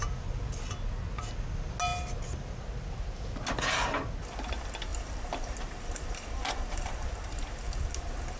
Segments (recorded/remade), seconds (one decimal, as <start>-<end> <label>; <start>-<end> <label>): 0.0-4.9 recorded; 4.9-7.4 remade; 7.4-8.4 recorded